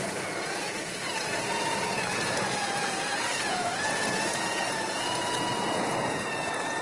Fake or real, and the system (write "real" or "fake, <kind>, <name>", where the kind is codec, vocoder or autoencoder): fake, vocoder, Vocos